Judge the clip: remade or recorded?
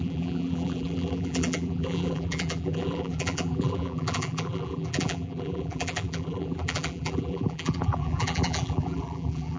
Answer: remade